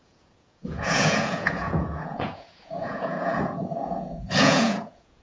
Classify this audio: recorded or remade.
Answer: remade